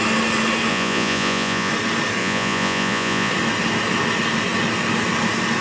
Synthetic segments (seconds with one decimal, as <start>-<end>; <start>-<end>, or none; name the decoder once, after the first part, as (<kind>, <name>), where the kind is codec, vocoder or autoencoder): 0.7-1.7 (vocoder, Vocos); 2.2-3.3